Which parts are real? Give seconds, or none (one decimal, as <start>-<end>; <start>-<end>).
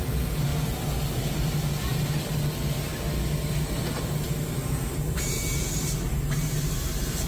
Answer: 2.9-4.0